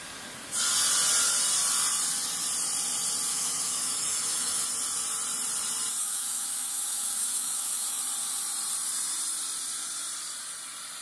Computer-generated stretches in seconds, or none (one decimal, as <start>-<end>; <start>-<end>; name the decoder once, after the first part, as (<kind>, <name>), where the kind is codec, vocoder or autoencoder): 3.3-4.6 (autoencoder, DAC-VAE); 6.0-8.0